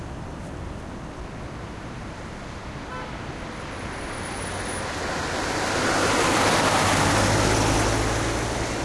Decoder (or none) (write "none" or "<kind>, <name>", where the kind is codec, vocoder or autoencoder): none